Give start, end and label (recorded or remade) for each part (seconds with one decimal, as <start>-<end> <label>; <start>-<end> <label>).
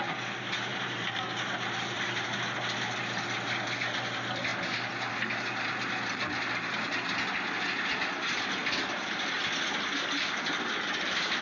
0.0-0.7 recorded; 0.7-1.2 remade; 1.2-4.5 recorded; 4.5-5.1 remade; 5.1-11.4 recorded